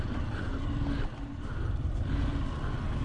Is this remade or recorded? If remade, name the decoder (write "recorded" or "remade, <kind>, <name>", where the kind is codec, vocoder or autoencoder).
recorded